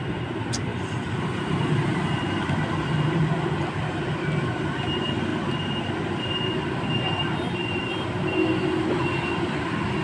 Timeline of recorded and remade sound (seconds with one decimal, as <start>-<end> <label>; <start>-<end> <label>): 0.0-0.7 recorded; 0.7-3.3 remade; 3.3-10.0 recorded